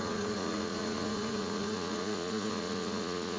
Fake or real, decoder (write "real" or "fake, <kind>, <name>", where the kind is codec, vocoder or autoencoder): fake, vocoder, Vocos